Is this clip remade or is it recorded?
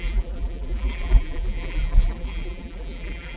remade